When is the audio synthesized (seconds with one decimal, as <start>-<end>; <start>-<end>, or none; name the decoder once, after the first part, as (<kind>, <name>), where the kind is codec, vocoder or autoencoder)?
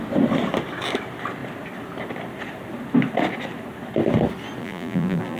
4.6-5.4 (vocoder, BigVGAN v2)